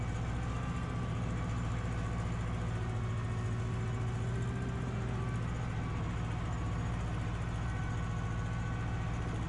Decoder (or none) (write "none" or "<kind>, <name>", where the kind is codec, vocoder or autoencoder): none